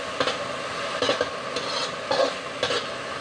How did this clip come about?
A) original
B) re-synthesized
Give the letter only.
A